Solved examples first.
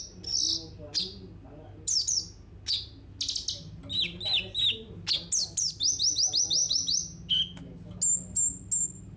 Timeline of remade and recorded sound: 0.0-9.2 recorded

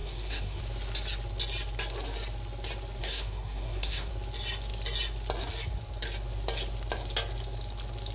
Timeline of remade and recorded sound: 0.0-0.6 remade; 0.6-3.0 recorded; 3.0-4.1 remade; 4.1-8.1 recorded

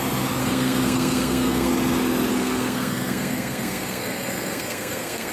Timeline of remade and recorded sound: 0.0-0.4 recorded; 0.4-1.7 remade; 1.7-2.3 recorded; 2.3-5.3 remade

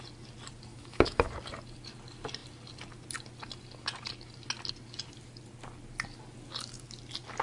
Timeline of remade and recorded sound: 0.0-0.7 recorded; 0.7-1.3 remade; 1.3-7.4 recorded

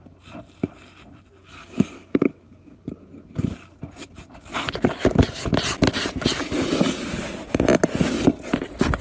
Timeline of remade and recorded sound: 0.0-1.4 recorded; 1.4-3.0 remade; 3.0-9.0 recorded

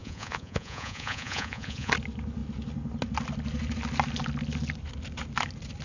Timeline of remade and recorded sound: 0.0-1.9 remade; 1.9-5.8 recorded

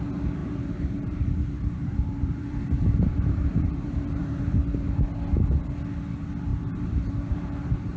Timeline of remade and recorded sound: 0.0-0.4 recorded; 0.4-4.6 remade; 4.6-6.5 recorded; 6.5-8.0 remade

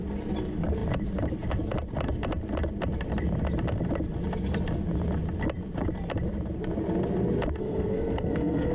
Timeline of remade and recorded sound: 0.0-7.6 recorded; 7.6-8.7 remade